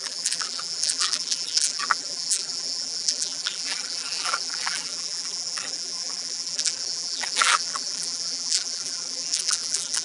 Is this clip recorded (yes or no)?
no